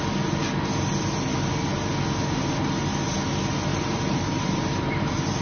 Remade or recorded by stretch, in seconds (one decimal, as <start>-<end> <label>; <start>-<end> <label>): 0.0-3.7 recorded; 3.7-5.0 remade; 5.0-5.4 recorded